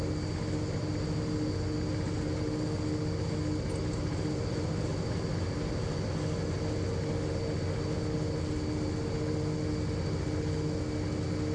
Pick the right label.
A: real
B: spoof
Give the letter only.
A